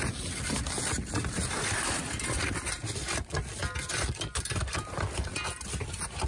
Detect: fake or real real